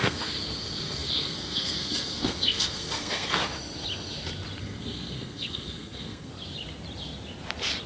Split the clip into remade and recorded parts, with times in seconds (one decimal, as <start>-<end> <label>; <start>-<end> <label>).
0.0-3.4 remade; 3.4-4.6 recorded; 4.6-6.3 remade; 6.3-7.9 recorded